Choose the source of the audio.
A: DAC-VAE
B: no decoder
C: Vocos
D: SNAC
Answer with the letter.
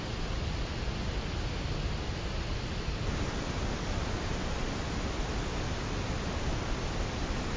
B